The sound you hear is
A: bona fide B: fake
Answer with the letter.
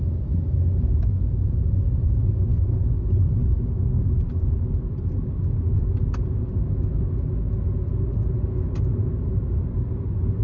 A